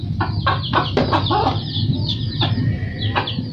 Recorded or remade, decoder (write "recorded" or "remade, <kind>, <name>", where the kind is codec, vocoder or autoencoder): recorded